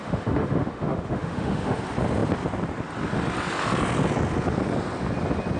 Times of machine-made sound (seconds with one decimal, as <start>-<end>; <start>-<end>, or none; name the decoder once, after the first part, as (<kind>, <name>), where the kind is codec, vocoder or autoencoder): 0.0-1.8 (autoencoder, DAC-VAE)